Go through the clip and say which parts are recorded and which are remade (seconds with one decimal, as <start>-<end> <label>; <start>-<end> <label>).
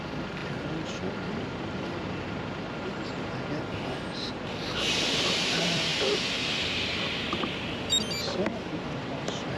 0.0-9.6 recorded